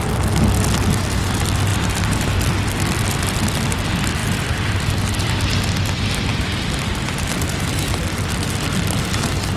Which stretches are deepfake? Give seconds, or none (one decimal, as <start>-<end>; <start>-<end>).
1.7-2.5; 4.2-5.6; 6.3-9.6